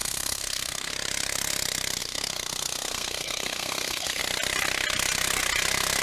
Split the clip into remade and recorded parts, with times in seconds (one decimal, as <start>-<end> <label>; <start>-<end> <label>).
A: 0.0-0.9 remade; 0.9-2.0 recorded; 2.0-4.2 remade; 4.2-6.0 recorded